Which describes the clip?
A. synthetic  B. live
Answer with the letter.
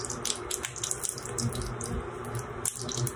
B